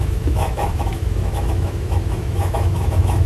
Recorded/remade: remade